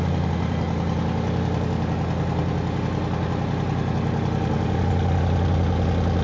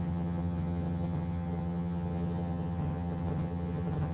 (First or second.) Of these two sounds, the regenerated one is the second